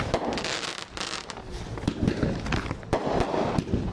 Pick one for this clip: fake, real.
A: real